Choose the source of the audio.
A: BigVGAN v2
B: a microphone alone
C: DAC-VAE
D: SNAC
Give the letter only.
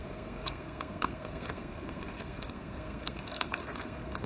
D